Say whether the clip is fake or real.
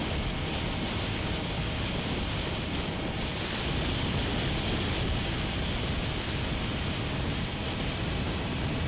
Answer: real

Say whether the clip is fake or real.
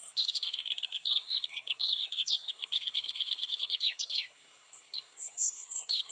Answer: fake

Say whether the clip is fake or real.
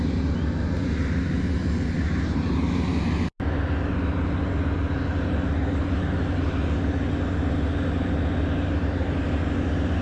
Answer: real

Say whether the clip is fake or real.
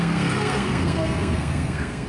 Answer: fake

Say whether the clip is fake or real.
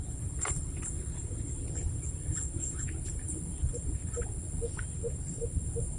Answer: real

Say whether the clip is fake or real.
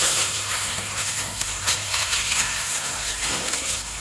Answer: fake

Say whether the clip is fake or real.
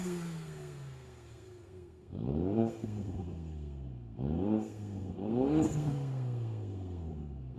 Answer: fake